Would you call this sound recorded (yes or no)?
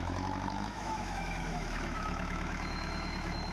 no